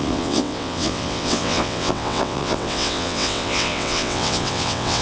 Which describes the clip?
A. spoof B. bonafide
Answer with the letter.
A